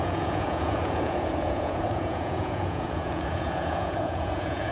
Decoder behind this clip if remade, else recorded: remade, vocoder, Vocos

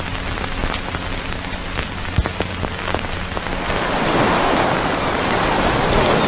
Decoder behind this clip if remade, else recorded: recorded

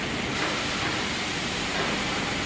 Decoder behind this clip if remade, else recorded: recorded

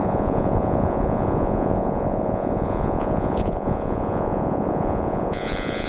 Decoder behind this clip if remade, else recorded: remade, vocoder, Vocos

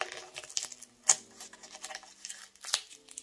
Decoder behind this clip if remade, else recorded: recorded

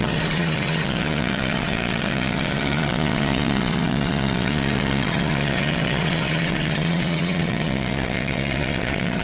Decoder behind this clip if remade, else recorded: remade, vocoder, Vocos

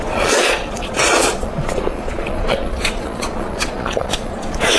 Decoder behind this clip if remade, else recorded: remade, vocoder, Vocos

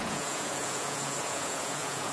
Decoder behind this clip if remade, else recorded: remade, vocoder, Vocos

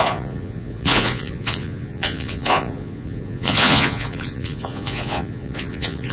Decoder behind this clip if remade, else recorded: remade, vocoder, Vocos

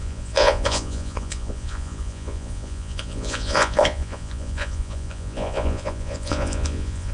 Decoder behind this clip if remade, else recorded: remade, vocoder, Vocos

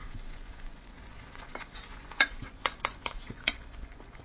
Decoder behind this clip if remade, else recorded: remade, vocoder, Vocos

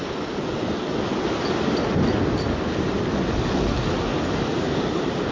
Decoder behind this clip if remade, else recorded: recorded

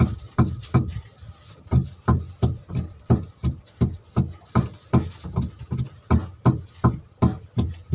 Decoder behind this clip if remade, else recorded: recorded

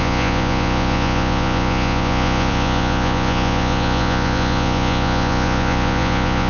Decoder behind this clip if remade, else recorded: remade, vocoder, Vocos